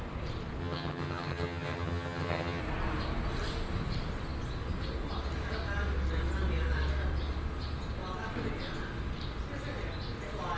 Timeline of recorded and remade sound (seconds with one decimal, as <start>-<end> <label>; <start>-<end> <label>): 0.0-0.6 recorded; 0.6-2.6 remade; 2.6-10.6 recorded